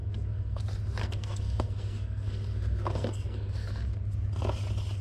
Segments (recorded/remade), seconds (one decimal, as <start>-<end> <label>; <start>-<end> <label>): 0.0-0.6 remade; 0.6-1.0 recorded; 1.0-4.0 remade; 4.0-5.0 recorded